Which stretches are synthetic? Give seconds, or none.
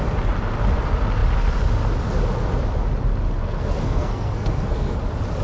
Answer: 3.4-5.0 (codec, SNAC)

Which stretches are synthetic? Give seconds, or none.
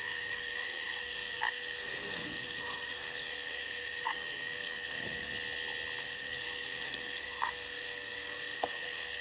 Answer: 0.0-5.3 (codec, SNAC); 6.0-9.2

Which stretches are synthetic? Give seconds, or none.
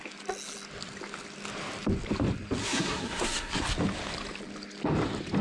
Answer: 2.6-3.6 (codec, SNAC)